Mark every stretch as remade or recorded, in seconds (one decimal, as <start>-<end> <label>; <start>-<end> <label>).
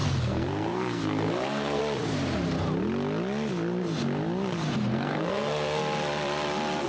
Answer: 0.0-1.8 remade; 1.8-4.9 recorded; 4.9-5.8 remade; 5.8-6.9 recorded